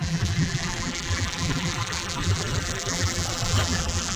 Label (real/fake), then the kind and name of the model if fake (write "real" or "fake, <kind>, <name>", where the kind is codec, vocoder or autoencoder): fake, vocoder, BigVGAN v2